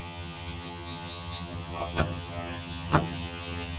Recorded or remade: remade